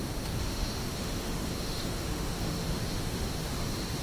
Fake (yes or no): yes